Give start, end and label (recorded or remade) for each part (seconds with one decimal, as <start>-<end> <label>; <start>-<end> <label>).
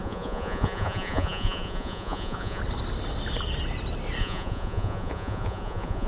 0.0-2.6 remade; 2.6-4.2 recorded; 4.2-6.1 remade